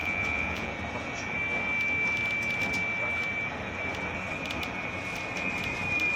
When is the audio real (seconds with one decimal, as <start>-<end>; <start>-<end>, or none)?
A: 0.7-6.2